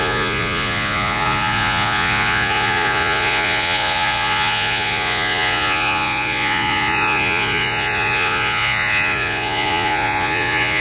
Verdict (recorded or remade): remade